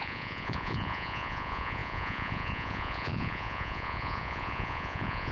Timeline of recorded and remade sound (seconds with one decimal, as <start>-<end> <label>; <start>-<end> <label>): 0.0-5.3 remade